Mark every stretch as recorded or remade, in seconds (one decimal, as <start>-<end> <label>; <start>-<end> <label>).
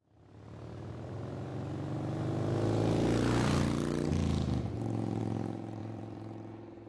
0.0-5.8 recorded; 5.8-6.9 remade